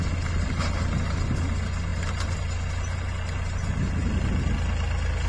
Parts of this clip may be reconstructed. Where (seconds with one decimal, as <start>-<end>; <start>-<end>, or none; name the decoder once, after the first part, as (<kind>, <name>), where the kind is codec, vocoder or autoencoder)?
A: none